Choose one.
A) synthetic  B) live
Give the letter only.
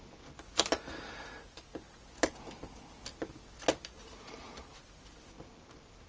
B